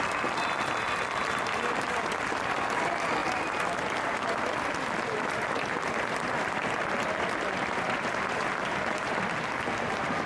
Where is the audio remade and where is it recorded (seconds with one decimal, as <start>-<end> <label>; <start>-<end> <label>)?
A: 0.0-10.3 recorded